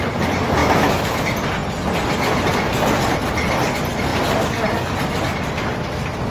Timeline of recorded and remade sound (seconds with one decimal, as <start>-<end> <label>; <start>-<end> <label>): 0.0-0.6 recorded; 0.6-1.2 remade; 1.2-6.3 recorded